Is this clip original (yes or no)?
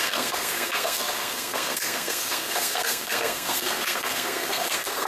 no